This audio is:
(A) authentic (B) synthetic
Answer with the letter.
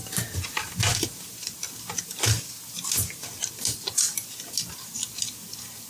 A